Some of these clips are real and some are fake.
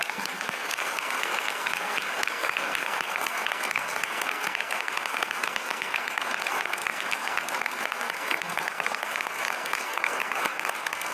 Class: fake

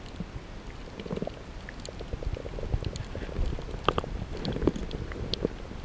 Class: real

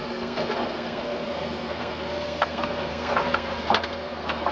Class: fake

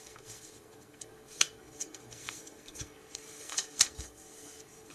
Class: fake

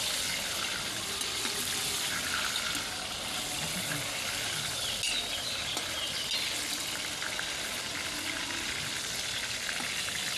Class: real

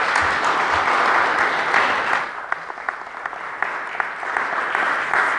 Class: real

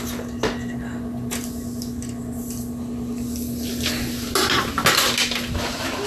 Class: real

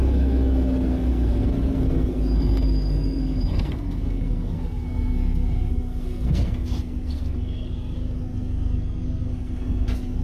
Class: fake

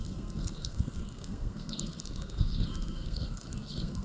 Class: fake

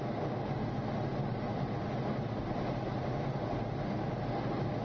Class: real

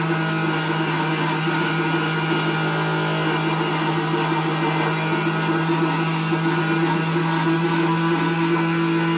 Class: real